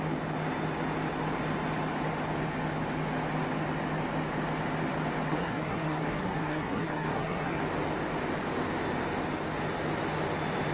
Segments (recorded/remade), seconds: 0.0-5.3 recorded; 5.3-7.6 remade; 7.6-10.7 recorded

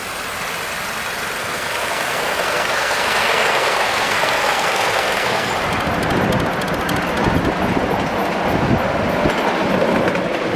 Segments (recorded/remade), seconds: 0.0-1.4 recorded; 1.4-5.5 remade; 5.5-10.6 recorded

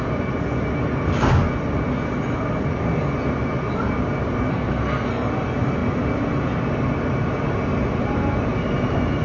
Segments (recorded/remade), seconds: 0.0-4.5 recorded; 4.5-5.3 remade; 5.3-9.2 recorded

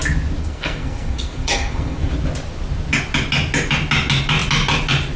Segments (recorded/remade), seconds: 0.0-0.4 recorded; 0.4-2.1 remade; 2.1-5.2 recorded

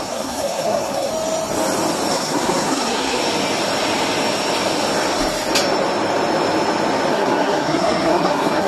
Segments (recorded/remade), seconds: 0.0-1.1 remade; 1.1-2.1 recorded; 2.1-3.2 remade; 3.2-7.1 recorded; 7.1-8.7 remade

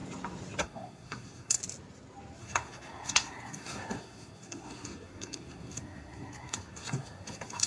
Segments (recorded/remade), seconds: 0.0-0.6 recorded; 0.6-1.6 remade; 1.6-2.4 recorded; 2.4-7.7 remade

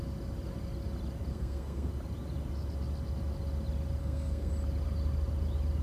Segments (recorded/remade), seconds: 0.0-1.3 recorded; 1.3-1.9 remade; 1.9-4.0 recorded; 4.0-4.5 remade; 4.5-5.8 recorded